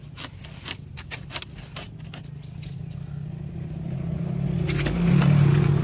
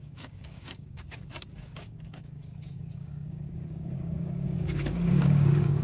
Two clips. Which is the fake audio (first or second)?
second